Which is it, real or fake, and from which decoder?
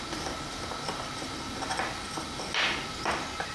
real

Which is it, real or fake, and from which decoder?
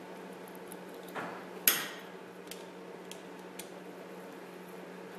real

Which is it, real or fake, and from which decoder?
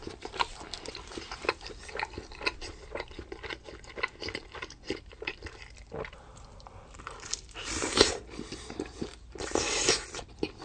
fake, vocoder, BigVGAN v2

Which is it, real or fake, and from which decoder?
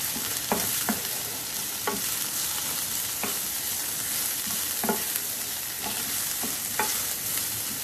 fake, vocoder, BigVGAN v2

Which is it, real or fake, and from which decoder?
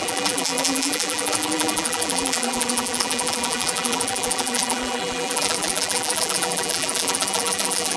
fake, vocoder, BigVGAN v2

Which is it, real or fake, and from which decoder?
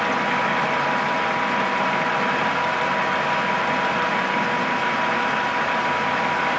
real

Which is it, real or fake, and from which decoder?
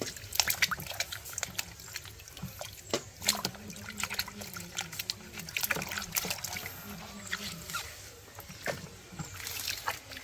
real